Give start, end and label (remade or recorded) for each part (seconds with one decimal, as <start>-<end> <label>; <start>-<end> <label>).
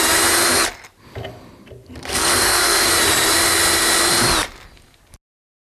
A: 0.0-2.1 recorded; 2.1-2.9 remade; 2.9-5.6 recorded